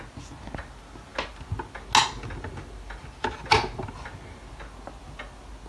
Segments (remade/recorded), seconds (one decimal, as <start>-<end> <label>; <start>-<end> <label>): 0.0-5.7 recorded